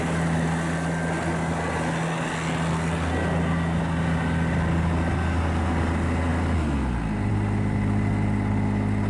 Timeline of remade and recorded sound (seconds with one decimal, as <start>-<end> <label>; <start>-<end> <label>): 0.0-9.1 recorded